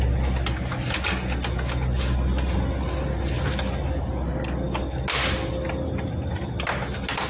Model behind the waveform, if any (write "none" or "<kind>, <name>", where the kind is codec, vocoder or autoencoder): none